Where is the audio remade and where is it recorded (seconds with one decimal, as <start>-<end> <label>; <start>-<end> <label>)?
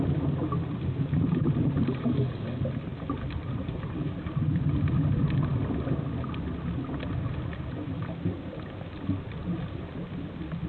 0.0-1.4 recorded; 1.4-2.1 remade; 2.1-2.9 recorded; 2.9-4.6 remade; 4.6-10.7 recorded